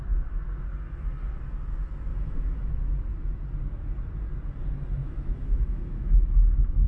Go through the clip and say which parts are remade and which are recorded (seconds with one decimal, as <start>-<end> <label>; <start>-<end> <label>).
0.0-2.1 recorded; 2.1-2.7 remade; 2.7-5.0 recorded; 5.0-6.9 remade